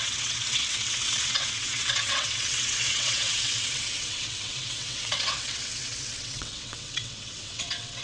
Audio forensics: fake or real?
fake